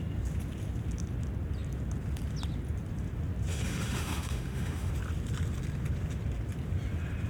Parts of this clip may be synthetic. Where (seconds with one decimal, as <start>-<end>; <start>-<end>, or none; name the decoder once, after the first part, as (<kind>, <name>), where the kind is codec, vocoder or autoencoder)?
3.5-4.9 (autoencoder, DAC-VAE)